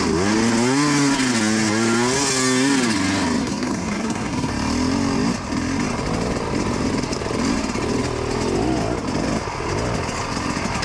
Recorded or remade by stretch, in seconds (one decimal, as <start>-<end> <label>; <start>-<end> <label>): 0.0-3.4 recorded; 3.4-4.5 remade; 4.5-10.8 recorded